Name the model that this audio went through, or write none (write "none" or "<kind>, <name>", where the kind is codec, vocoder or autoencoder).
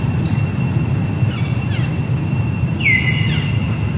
none